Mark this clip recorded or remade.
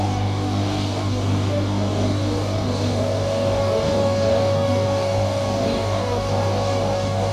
remade